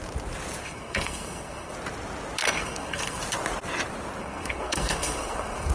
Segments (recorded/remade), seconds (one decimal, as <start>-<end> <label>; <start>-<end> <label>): 0.0-0.6 recorded; 0.6-1.7 remade; 1.7-2.4 recorded; 2.4-3.2 remade; 3.2-4.2 recorded; 4.2-5.7 remade